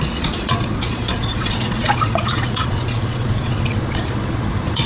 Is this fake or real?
fake